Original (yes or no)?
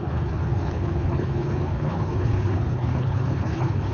no